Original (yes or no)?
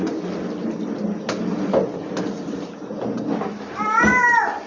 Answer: yes